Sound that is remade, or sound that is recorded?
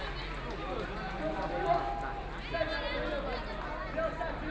recorded